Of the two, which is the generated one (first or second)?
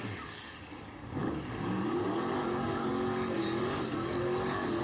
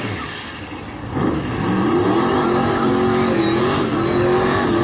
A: first